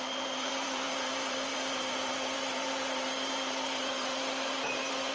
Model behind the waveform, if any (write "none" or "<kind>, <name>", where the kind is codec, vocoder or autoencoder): vocoder, BigVGAN v2